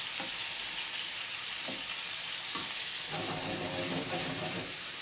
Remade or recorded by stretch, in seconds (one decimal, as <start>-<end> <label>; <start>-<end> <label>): 0.0-4.0 recorded; 4.0-5.0 remade